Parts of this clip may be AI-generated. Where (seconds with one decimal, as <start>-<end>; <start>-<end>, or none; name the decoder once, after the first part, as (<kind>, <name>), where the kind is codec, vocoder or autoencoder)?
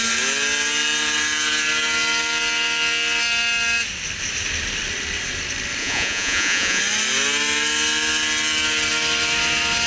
5.8-6.8 (vocoder, Vocos)